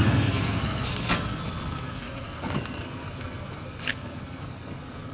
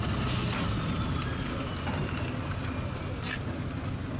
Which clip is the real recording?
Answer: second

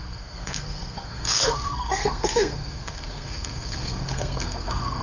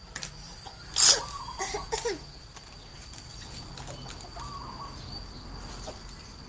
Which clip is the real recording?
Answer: second